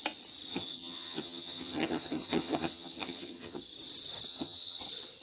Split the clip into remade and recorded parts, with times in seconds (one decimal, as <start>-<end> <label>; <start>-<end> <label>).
0.0-0.5 recorded; 0.5-3.6 remade; 3.6-4.3 recorded; 4.3-4.8 remade; 4.8-5.2 recorded